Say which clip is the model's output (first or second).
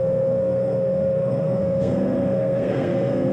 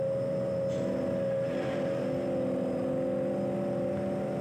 first